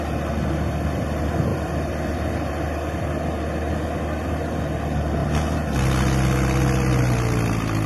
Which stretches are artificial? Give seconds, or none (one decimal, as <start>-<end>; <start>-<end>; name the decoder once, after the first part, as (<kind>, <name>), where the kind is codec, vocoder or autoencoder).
1.5-2.5 (vocoder, BigVGAN v2)